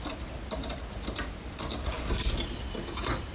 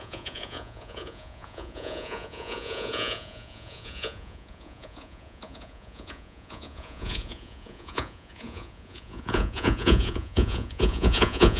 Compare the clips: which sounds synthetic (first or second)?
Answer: second